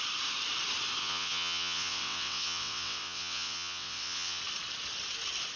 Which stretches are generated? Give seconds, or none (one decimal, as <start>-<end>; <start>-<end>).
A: 1.0-4.4